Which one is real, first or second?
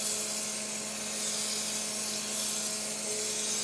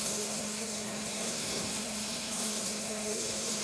first